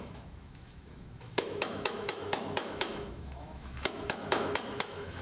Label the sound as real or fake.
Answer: fake